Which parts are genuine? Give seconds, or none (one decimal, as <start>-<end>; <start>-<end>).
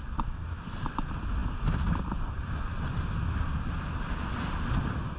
0.0-5.2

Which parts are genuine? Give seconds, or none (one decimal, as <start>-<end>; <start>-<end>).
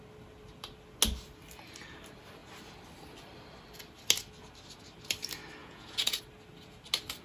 0.0-5.6; 6.2-7.2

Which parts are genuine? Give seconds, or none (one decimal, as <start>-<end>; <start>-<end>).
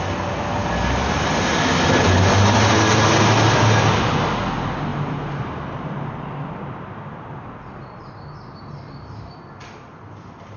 0.0-4.9; 9.5-10.6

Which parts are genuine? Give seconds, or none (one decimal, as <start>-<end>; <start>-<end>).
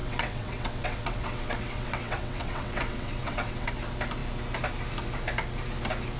3.7-6.2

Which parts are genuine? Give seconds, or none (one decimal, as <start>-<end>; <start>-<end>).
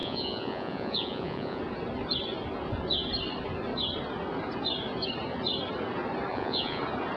1.6-6.3; 6.8-7.2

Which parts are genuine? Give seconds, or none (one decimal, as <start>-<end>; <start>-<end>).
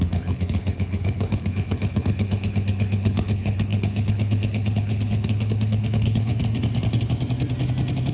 6.4-8.1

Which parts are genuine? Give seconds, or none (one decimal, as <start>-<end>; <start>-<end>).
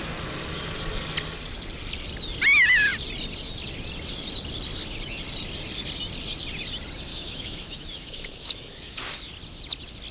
0.0-7.1; 9.1-10.1